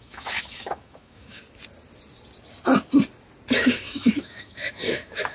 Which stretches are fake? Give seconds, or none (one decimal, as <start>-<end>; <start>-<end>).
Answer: 0.0-1.4; 3.6-5.3